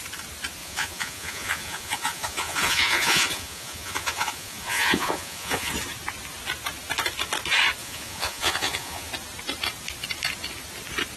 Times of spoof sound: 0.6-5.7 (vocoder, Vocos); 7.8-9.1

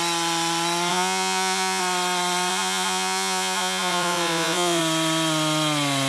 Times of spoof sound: 0.9-1.8 (vocoder, Vocos); 2.5-4.8